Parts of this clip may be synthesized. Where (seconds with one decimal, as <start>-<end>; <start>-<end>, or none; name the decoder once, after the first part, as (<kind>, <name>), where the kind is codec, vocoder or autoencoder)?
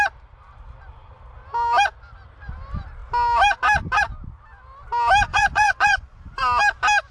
5.3-6.6 (vocoder, Vocos)